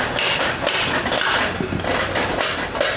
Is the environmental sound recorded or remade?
recorded